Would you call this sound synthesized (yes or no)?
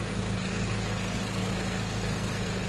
yes